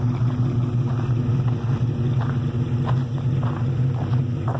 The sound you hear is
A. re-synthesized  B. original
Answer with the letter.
B